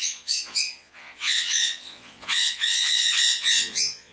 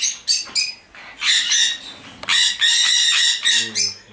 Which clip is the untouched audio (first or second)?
second